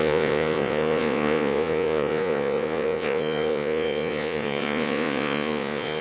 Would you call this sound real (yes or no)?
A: no